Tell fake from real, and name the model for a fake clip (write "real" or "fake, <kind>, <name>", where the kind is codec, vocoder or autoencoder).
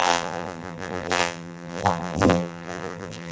fake, vocoder, BigVGAN v2